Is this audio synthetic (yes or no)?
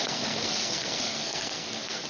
yes